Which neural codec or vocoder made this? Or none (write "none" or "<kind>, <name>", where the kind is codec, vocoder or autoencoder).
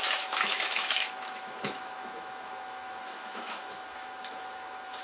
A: autoencoder, DAC-VAE